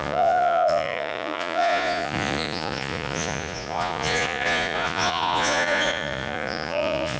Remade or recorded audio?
remade